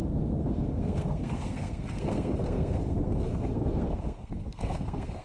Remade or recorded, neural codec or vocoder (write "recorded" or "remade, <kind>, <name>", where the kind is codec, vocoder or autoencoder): remade, codec, SNAC